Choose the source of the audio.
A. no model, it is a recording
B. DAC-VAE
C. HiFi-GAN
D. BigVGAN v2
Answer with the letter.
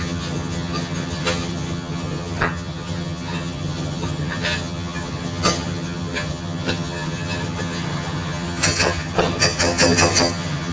C